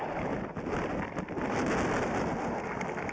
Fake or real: real